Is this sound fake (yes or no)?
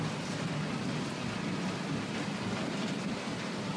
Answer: no